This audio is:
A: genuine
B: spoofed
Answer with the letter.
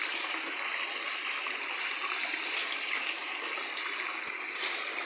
A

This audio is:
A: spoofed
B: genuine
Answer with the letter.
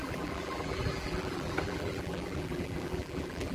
A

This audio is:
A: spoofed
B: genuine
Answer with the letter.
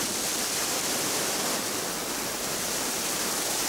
B